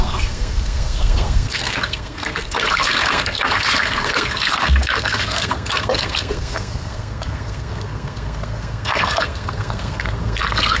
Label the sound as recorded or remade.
remade